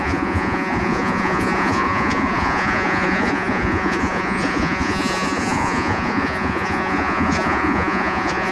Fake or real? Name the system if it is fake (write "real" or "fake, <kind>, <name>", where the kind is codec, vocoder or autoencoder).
fake, vocoder, Vocos